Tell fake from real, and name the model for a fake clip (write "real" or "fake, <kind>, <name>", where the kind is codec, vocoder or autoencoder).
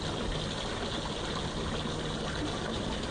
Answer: real